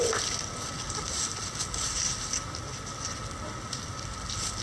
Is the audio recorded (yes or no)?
yes